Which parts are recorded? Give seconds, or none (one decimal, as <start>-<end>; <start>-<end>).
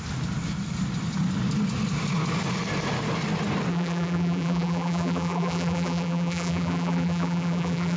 0.0-3.7